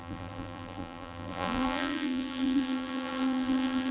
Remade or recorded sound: remade